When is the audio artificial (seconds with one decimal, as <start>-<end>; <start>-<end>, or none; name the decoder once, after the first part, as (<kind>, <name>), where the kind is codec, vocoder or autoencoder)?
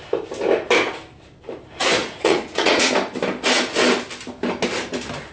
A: 2.0-2.9 (vocoder, Vocos)